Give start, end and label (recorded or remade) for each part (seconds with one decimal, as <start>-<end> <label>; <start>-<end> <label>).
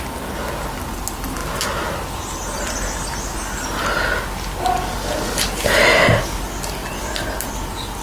0.0-8.0 recorded